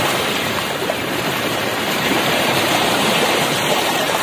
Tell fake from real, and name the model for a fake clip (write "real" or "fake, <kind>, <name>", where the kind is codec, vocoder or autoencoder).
fake, vocoder, BigVGAN v2